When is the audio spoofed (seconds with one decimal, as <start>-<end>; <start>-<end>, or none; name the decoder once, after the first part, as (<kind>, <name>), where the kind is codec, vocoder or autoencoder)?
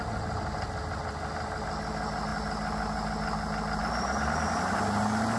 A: none